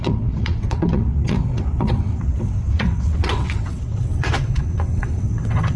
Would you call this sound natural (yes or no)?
no